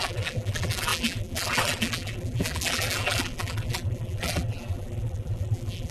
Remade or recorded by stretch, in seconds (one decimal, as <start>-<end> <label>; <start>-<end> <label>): 0.0-5.9 remade

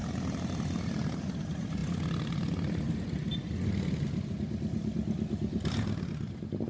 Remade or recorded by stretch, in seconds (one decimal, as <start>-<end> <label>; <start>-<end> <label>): 0.0-6.7 recorded

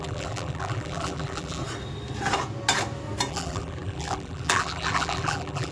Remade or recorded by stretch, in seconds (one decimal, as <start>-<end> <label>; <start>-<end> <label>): 0.0-1.6 remade; 1.6-3.3 recorded; 3.3-5.7 remade

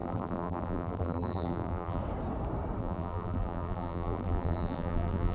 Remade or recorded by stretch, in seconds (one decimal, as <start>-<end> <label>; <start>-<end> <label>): 0.0-2.0 remade; 2.0-2.8 recorded; 2.8-5.3 remade

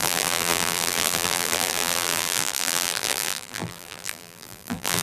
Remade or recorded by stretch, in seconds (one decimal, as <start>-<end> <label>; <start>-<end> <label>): 0.0-5.0 remade

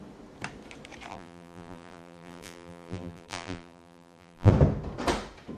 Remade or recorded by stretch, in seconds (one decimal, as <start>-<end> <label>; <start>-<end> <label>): 0.0-1.1 recorded; 1.1-4.5 remade; 4.5-5.6 recorded